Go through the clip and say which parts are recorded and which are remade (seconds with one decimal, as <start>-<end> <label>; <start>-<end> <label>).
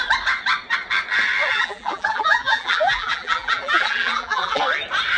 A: 0.0-1.5 recorded; 1.5-4.6 remade; 4.6-5.2 recorded